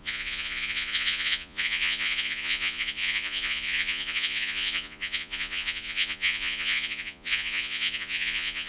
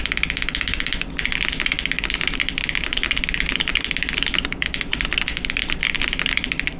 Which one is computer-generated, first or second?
first